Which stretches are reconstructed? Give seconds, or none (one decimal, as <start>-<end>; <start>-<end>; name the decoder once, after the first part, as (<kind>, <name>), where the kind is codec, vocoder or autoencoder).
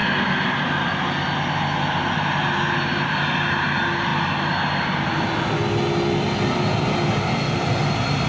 none